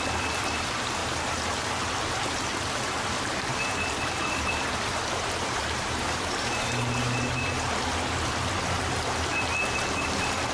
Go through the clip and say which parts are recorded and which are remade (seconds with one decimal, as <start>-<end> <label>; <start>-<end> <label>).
0.0-1.0 recorded; 1.0-1.6 remade; 1.6-3.5 recorded; 3.5-7.5 remade; 7.5-10.5 recorded